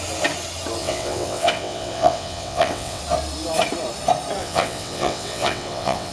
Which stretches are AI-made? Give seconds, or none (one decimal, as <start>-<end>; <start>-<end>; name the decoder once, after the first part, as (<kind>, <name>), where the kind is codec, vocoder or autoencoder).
0.8-3.0 (vocoder, WaveNeXt); 4.4-6.1